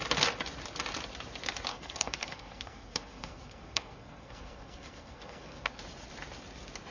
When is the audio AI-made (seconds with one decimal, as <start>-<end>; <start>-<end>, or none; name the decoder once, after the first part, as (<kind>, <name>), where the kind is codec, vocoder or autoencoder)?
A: 1.7-5.8 (codec, SNAC)